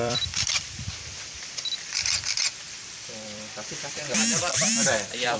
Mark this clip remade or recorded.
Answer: remade